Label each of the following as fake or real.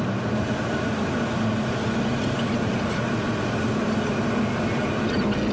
real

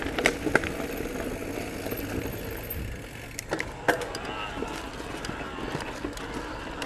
real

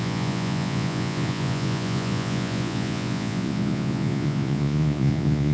fake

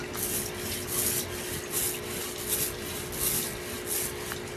real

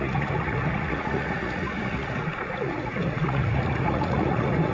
fake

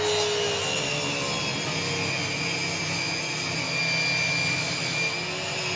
real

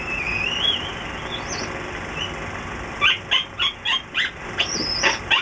real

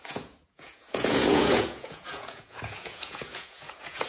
fake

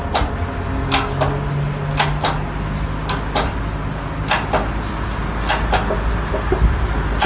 real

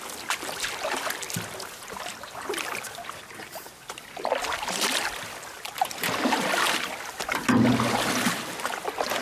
real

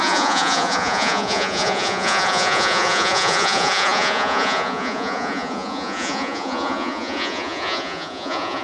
fake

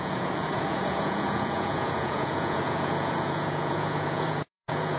fake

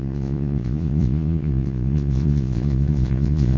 fake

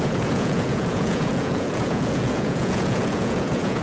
fake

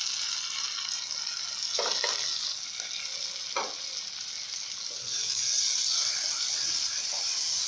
real